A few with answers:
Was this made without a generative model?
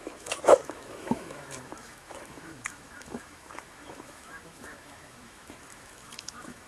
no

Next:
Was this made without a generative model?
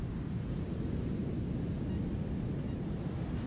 yes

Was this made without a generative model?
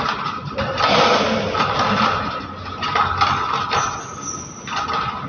yes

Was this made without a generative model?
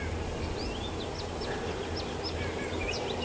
yes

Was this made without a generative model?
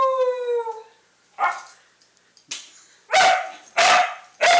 yes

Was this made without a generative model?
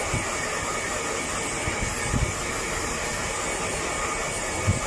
yes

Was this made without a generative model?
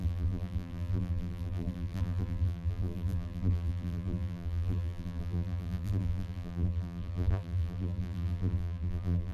no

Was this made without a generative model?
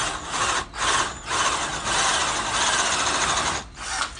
yes